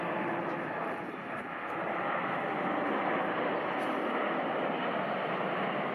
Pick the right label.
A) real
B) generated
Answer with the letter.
A